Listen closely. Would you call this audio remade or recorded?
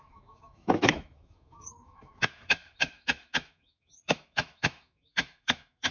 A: remade